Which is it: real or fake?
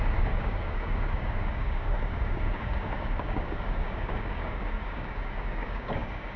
fake